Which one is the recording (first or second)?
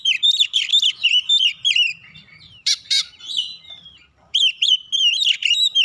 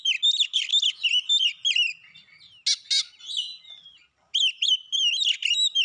second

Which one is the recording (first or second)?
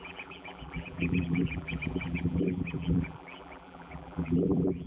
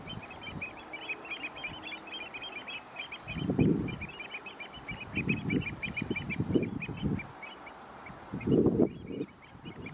second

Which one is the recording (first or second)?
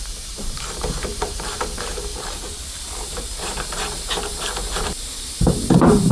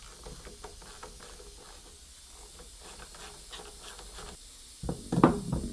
second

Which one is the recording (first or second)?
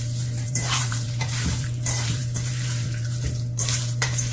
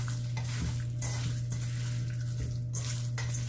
second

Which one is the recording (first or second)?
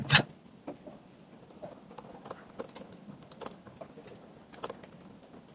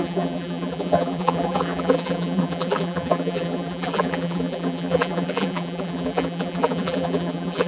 first